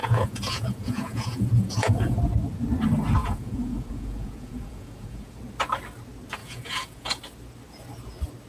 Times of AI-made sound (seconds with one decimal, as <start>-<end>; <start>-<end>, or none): 0.0-2.2; 3.2-5.4; 6.4-7.2